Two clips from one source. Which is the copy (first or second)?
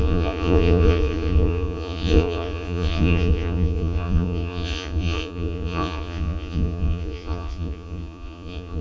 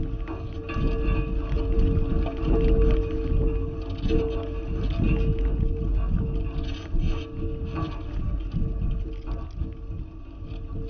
first